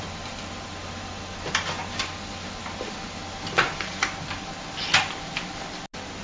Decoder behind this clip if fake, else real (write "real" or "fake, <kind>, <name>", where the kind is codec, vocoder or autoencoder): real